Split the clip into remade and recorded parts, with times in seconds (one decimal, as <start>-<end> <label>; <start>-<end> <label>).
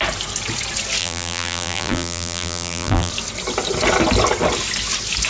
0.0-1.0 recorded; 1.0-3.1 remade; 3.1-5.3 recorded